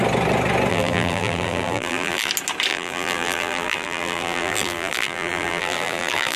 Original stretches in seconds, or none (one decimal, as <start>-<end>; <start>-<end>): 0.0-0.7; 2.3-2.7